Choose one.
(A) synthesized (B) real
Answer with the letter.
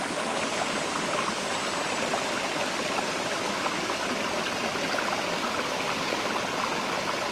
B